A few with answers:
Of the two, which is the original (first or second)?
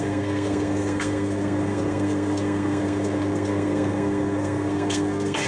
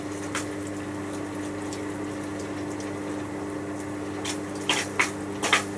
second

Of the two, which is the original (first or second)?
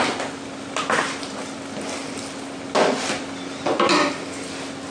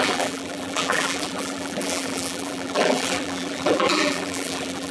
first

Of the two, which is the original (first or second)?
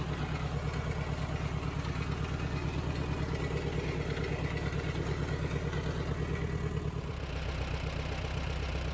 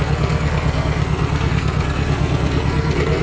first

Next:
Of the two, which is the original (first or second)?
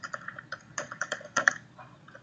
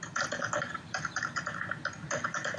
second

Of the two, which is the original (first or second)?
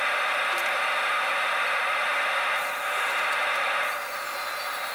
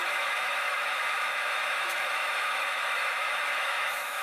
first